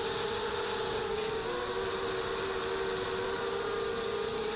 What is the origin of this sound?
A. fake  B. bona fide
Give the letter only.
B